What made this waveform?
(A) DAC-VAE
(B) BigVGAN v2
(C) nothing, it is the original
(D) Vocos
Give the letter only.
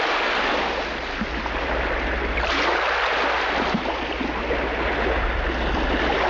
C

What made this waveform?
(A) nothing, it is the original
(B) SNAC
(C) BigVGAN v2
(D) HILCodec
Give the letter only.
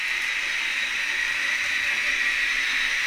C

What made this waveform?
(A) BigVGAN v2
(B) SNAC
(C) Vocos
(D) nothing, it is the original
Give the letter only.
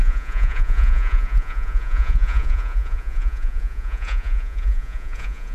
C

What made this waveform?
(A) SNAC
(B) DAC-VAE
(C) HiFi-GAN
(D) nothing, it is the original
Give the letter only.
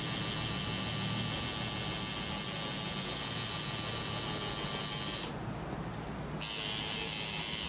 D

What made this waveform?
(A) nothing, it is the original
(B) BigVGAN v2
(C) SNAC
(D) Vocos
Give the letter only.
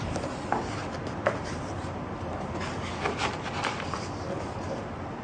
B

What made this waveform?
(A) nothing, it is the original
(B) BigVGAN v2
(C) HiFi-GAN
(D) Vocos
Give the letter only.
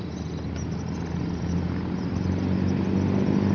A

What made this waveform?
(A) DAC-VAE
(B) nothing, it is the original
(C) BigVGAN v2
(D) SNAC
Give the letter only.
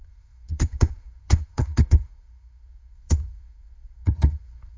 D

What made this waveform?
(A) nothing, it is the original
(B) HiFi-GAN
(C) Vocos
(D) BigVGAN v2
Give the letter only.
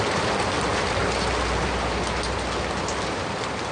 A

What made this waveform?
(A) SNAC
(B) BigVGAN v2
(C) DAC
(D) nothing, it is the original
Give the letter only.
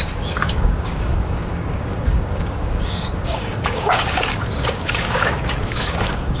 C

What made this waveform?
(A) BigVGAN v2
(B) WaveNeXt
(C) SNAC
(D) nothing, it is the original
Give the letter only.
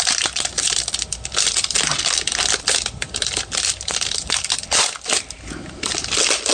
D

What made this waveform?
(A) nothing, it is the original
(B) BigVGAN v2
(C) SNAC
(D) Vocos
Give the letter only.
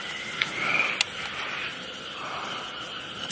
A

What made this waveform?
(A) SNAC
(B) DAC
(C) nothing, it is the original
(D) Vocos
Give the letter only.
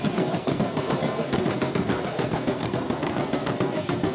A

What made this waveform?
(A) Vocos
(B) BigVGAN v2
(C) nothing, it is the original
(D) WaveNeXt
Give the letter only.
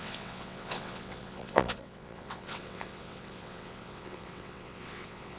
D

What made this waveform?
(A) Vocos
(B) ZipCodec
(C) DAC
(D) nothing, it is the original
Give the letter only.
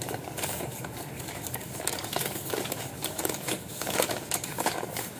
C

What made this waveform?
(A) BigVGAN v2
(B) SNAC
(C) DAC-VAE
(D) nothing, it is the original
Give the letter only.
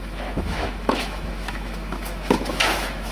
C